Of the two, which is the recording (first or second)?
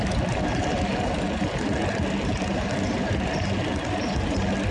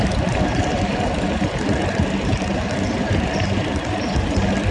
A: first